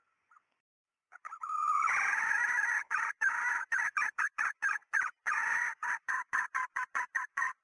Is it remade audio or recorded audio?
remade